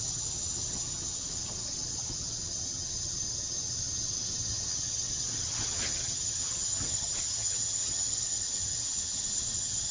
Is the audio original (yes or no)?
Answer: no